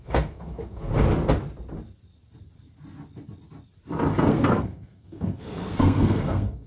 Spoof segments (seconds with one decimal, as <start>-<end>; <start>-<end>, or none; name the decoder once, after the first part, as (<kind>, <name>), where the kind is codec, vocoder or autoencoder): 0.0-0.9 (codec, SNAC); 4.3-6.7